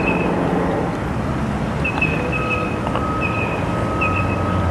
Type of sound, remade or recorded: recorded